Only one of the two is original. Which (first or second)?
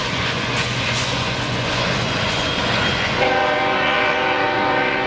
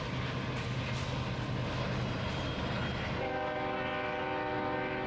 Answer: second